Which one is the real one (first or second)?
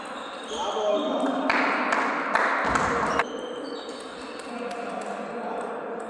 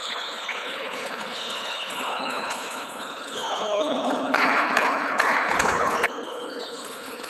first